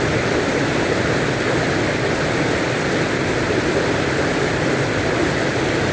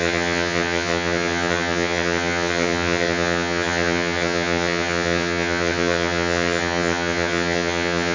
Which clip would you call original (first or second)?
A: first